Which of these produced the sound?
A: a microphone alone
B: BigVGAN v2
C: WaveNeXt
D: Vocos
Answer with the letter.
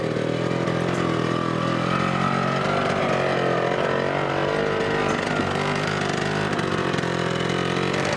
A